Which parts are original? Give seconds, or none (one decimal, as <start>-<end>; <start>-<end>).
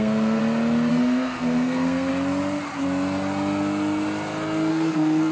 0.4-0.9; 2.1-4.7